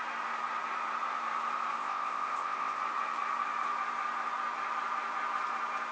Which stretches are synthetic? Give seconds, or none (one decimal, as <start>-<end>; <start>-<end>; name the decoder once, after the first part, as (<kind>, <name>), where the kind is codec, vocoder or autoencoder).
1.8-2.8 (codec, ZipCodec)